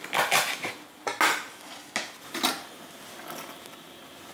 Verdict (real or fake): real